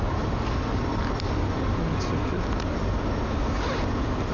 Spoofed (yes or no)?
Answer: no